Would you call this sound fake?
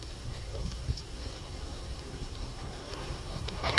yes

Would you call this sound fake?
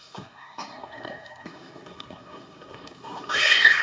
yes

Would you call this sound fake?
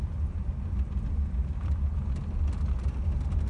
no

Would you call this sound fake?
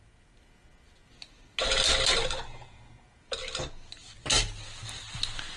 no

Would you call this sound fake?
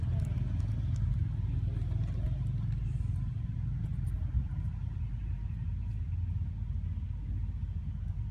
no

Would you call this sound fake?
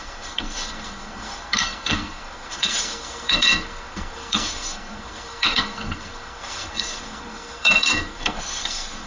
yes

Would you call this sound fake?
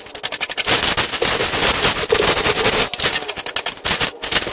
no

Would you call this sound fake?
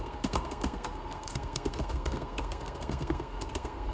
yes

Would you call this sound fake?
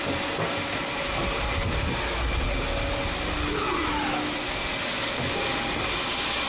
no